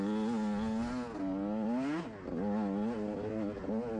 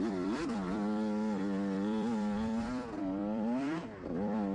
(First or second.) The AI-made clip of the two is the second